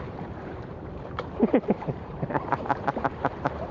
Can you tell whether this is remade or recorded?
remade